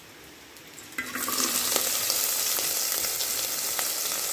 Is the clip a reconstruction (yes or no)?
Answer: no